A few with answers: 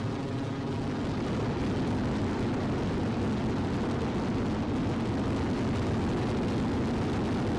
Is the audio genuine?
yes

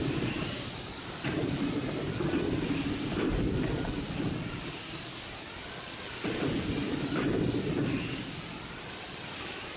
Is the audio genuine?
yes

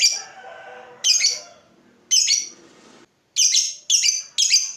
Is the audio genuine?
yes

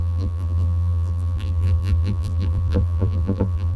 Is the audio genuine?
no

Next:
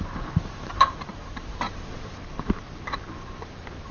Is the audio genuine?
no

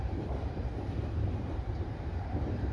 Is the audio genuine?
no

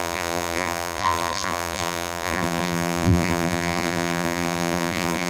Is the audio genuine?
no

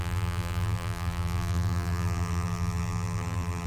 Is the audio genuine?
no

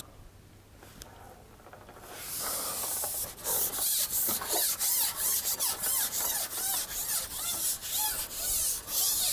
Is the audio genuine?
yes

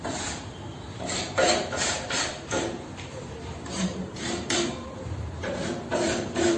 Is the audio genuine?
no